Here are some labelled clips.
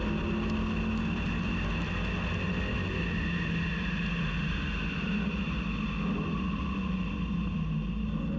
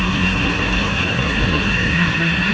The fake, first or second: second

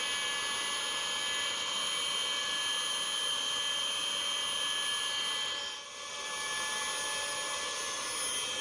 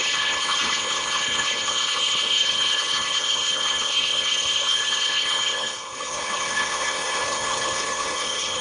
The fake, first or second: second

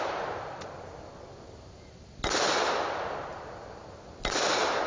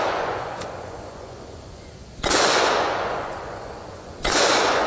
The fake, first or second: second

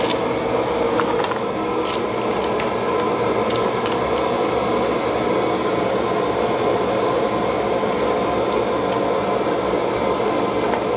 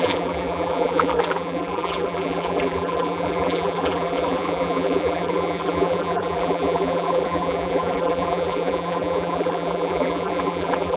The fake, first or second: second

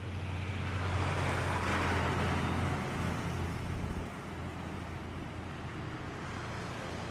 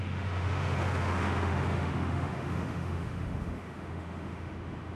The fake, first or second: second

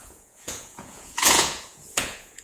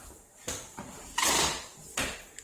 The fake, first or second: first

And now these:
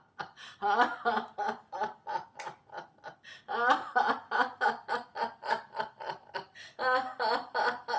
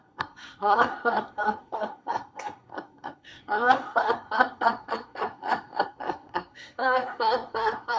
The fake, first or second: second